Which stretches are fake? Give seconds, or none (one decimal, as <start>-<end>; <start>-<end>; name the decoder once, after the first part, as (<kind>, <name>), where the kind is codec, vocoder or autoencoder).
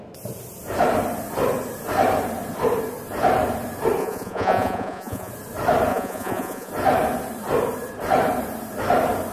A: 4.0-5.3 (vocoder, Vocos); 5.9-6.7